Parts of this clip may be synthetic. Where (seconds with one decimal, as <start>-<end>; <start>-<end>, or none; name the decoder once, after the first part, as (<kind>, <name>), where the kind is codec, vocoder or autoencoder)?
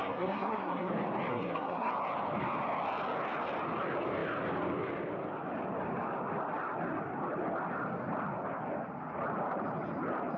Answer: 0.0-0.9 (codec, SNAC); 1.3-1.9